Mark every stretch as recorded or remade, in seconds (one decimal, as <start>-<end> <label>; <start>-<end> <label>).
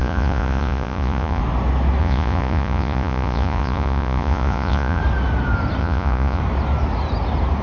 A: 0.0-1.4 remade; 1.4-2.0 recorded; 2.0-5.0 remade; 5.0-5.8 recorded; 5.8-6.4 remade; 6.4-7.6 recorded